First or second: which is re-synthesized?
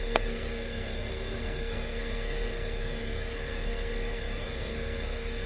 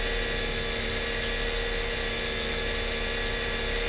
first